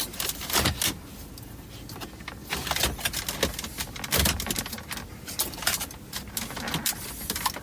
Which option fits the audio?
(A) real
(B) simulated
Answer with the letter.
A